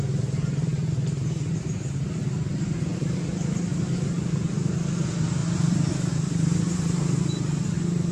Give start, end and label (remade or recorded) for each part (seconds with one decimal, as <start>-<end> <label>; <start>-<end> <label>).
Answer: 0.0-5.4 recorded; 5.4-7.2 remade; 7.2-8.1 recorded